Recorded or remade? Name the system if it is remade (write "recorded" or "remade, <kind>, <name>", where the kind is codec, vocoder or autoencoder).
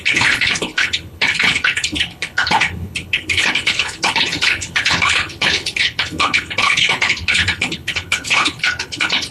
remade, codec, HILCodec